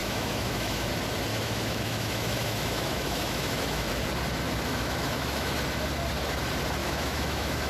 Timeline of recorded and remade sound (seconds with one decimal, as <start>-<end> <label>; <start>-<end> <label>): 0.0-0.9 remade; 0.9-1.3 recorded; 1.3-3.9 remade; 3.9-4.7 recorded; 4.7-5.5 remade; 5.5-6.8 recorded; 6.8-7.7 remade